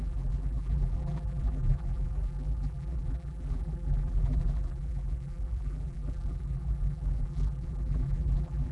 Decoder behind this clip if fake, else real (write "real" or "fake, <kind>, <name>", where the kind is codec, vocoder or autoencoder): fake, vocoder, BigVGAN v2